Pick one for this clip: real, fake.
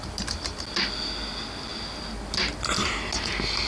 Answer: real